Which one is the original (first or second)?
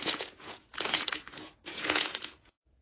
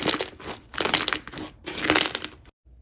second